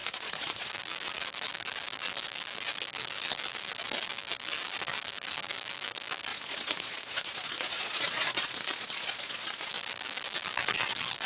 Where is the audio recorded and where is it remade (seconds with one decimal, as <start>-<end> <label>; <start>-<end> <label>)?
0.0-0.7 remade; 0.7-6.3 recorded; 6.3-9.7 remade; 9.7-11.3 recorded